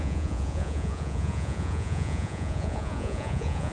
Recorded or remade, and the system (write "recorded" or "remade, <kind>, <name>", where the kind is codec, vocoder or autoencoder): remade, vocoder, Vocos